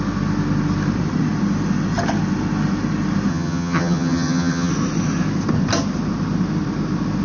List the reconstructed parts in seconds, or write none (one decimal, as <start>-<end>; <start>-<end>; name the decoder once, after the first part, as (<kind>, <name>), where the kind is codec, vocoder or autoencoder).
3.3-4.7 (vocoder, HiFi-GAN)